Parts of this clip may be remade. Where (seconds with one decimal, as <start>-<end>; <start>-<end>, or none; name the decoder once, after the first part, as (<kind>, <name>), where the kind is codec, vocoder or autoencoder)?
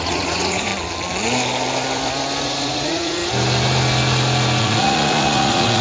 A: 0.0-0.7 (vocoder, Vocos); 2.4-3.2; 4.6-5.8